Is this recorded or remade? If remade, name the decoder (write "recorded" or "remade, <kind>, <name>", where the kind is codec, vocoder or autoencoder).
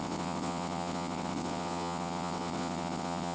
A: remade, vocoder, WaveNeXt